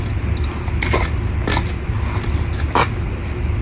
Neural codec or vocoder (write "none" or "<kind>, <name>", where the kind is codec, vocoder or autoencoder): none